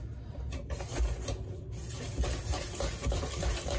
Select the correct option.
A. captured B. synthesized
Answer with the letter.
A